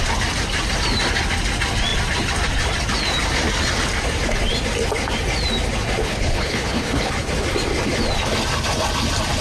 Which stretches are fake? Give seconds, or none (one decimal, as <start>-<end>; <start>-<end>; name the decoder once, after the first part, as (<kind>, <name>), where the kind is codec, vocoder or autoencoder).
6.0-7.1 (codec, HILCodec)